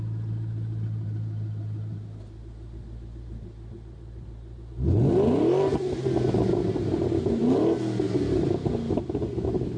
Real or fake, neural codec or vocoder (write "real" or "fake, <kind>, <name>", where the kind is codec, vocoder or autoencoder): real